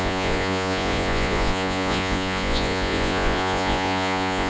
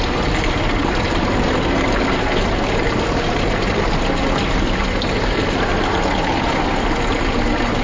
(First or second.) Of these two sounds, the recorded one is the second